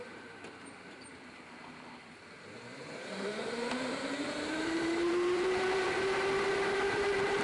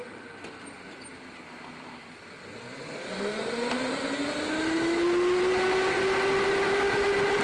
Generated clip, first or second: first